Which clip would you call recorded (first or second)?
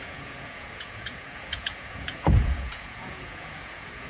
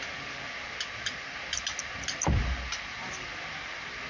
second